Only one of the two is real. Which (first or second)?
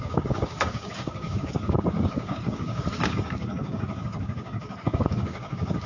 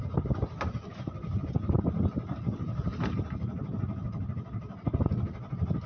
second